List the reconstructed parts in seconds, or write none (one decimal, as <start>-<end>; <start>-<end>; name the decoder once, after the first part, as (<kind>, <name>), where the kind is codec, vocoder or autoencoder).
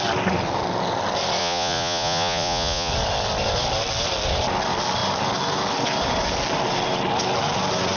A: 1.4-2.9 (vocoder, Vocos)